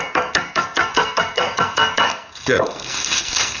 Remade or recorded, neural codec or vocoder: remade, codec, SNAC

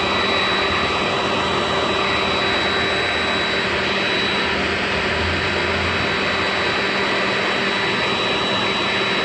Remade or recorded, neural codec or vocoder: recorded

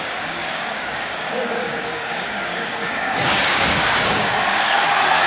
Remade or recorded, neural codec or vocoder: remade, codec, DAC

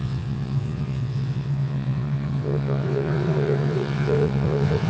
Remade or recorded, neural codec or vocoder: remade, vocoder, WaveNeXt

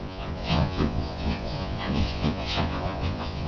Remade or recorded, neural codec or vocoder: remade, vocoder, Vocos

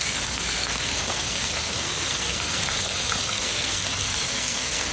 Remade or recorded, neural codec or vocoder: remade, codec, SNAC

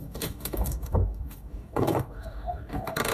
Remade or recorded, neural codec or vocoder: remade, codec, DAC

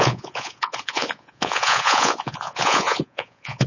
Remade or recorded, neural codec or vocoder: remade, vocoder, Vocos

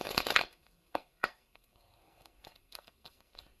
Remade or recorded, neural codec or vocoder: remade, codec, SNAC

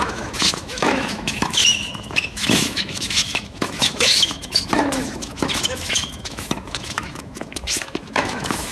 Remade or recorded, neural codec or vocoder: remade, autoencoder, DAC-VAE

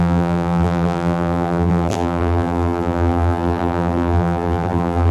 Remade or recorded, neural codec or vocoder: remade, vocoder, BigVGAN v2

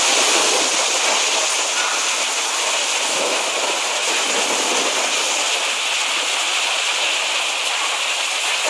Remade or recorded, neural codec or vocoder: recorded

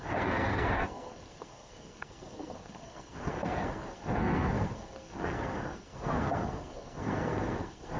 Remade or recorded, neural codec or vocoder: remade, codec, SNAC